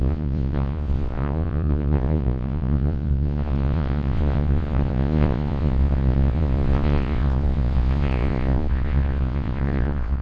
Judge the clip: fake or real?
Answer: fake